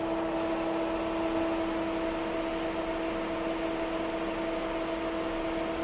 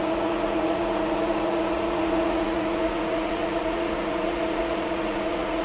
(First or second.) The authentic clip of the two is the first